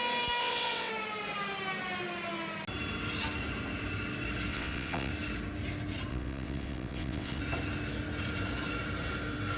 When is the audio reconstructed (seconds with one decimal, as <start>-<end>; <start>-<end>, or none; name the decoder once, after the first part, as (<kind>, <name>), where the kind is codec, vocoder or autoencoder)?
0.4-0.9 (vocoder, WaveNeXt); 4.5-5.1; 6.1-7.4